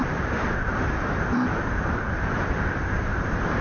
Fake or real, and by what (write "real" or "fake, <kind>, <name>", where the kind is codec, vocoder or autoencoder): fake, vocoder, BigVGAN v2